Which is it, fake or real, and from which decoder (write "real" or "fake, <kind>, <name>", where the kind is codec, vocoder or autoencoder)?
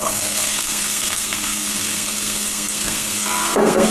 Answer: fake, codec, SNAC